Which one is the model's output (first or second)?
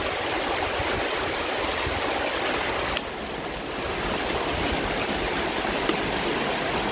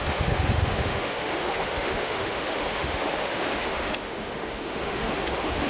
second